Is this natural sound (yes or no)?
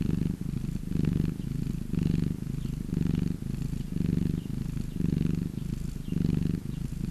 yes